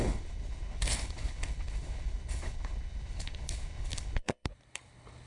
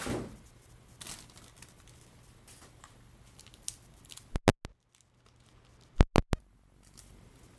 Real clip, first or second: second